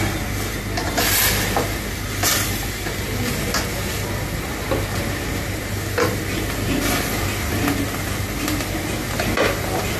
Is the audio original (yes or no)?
yes